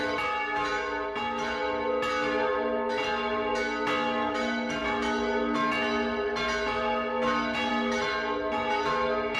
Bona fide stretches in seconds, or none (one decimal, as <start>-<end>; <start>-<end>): 0.0-9.4